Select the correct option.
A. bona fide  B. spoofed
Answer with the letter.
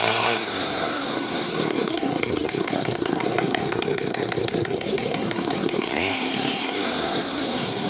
B